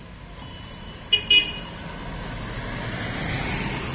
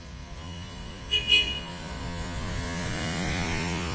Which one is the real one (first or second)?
first